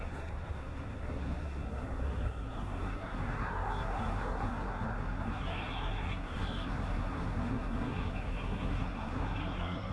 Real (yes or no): no